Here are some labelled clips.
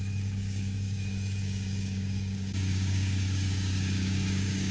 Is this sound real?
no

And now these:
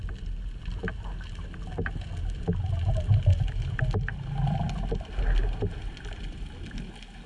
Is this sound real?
yes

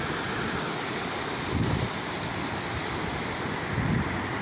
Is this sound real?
yes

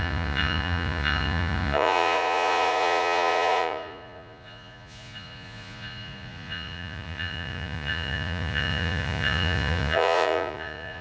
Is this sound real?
no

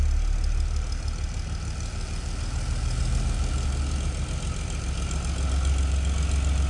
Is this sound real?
yes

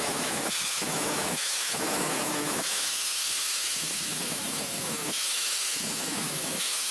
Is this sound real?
no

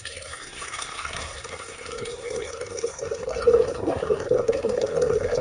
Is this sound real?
no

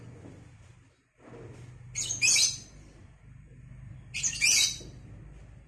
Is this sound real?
yes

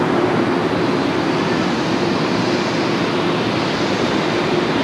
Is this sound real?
yes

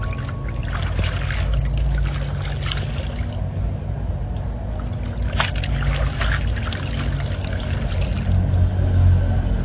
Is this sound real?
yes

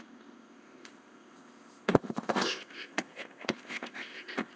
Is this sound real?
no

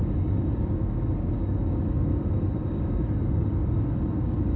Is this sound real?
no